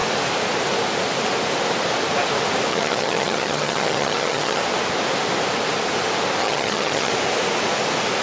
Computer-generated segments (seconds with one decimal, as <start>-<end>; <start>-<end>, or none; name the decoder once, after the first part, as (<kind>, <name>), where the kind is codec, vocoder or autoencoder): 2.7-4.6 (vocoder, HiFi-GAN); 6.4-7.1